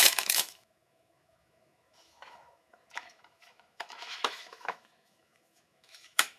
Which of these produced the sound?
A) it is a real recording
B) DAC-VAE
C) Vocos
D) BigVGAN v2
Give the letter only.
B